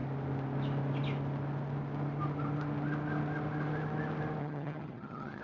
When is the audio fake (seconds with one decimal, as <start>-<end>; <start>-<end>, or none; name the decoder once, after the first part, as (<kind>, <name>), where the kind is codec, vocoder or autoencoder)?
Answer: 4.4-5.4 (vocoder, HiFi-GAN)